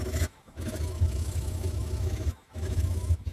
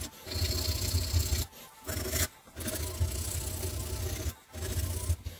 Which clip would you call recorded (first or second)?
second